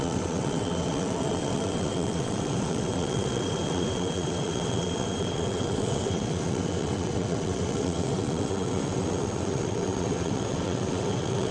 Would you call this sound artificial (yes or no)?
yes